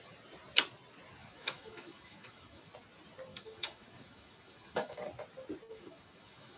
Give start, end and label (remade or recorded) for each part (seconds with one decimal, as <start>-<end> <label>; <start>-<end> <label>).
0.0-1.2 recorded; 1.2-2.7 remade; 2.7-3.3 recorded; 3.3-5.0 remade; 5.0-5.7 recorded; 5.7-6.6 remade